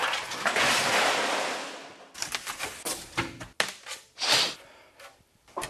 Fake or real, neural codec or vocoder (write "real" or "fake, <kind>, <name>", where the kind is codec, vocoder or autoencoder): real